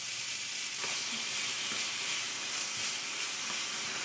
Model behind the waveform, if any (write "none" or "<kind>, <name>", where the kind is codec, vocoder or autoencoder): none